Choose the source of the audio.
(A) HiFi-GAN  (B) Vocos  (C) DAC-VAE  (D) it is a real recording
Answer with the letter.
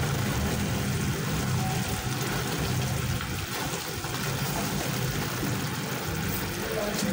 D